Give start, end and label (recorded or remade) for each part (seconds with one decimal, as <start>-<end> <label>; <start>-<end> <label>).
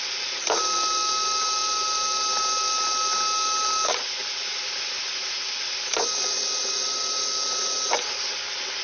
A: 0.0-8.8 recorded